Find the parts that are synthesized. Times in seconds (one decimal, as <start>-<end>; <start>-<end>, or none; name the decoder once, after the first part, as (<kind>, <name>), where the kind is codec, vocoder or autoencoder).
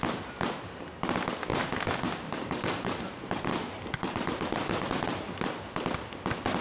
1.5-5.5 (vocoder, BigVGAN v2)